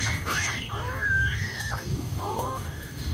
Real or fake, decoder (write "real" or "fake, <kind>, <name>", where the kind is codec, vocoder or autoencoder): fake, codec, DAC